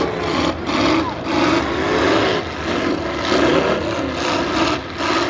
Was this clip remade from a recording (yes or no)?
no